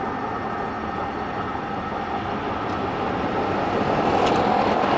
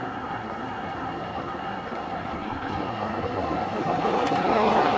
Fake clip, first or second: second